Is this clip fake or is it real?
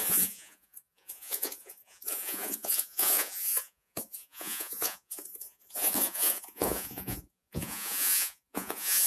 fake